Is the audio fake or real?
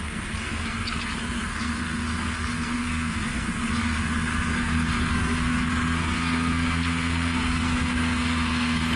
fake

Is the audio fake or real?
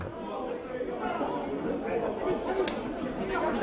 real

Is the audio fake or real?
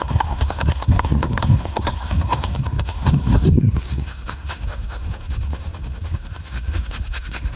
fake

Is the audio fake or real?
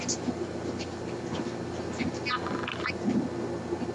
real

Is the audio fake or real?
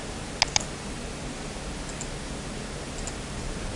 real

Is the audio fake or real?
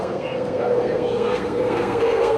fake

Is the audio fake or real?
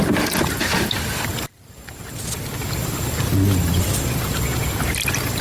real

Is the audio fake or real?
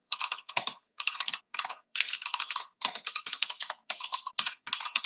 fake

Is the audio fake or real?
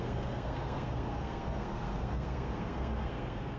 fake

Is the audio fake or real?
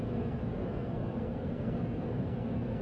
fake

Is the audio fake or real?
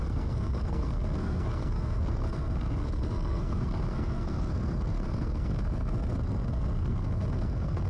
fake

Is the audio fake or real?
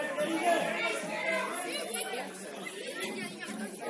real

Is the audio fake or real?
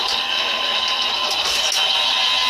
real